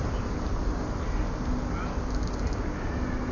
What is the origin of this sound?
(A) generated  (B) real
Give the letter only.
B